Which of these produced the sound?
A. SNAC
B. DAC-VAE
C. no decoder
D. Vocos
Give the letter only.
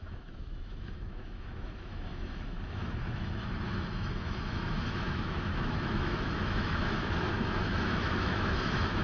B